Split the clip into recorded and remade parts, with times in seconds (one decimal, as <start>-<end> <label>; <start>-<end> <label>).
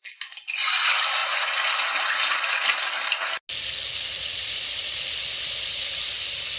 0.0-6.6 recorded